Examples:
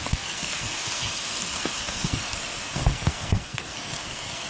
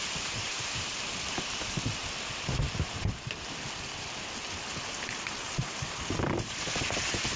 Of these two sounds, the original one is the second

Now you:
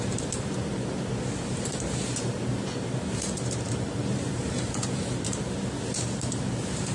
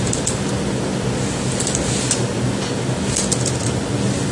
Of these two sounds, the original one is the second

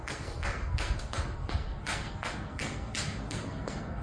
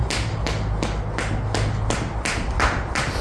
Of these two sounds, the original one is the second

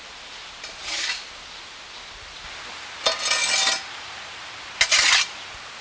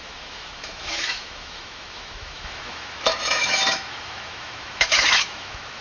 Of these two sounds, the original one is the first